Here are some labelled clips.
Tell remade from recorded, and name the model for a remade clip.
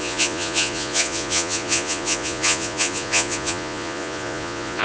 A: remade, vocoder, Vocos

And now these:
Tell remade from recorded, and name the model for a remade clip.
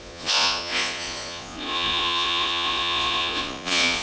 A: remade, vocoder, Vocos